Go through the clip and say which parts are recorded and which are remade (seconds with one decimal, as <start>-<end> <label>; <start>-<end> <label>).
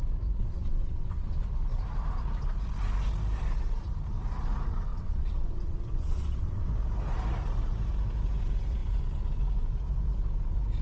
0.0-0.4 recorded; 0.4-1.4 remade; 1.4-4.9 recorded; 4.9-6.7 remade; 6.7-10.8 recorded